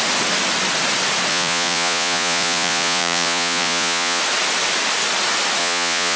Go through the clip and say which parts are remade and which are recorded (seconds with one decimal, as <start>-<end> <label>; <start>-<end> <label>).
0.0-1.3 recorded; 1.3-4.2 remade; 4.2-5.6 recorded; 5.6-6.2 remade